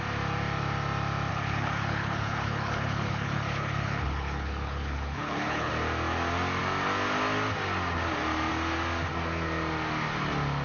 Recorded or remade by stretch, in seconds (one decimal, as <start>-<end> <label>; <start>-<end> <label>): 0.0-1.3 recorded; 1.3-5.7 remade; 5.7-10.6 recorded